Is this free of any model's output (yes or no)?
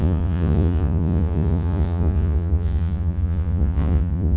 no